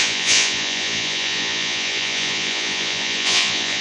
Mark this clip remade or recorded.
remade